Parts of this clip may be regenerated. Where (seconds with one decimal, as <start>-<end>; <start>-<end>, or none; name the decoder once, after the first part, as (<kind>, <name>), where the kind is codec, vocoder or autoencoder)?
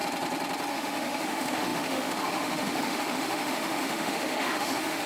0.7-5.1 (autoencoder, DAC-VAE)